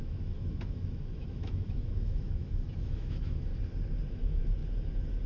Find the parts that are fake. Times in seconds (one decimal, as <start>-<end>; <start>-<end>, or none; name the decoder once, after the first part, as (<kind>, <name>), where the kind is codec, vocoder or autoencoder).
0.0-3.5 (autoencoder, DAC-VAE); 4.1-4.6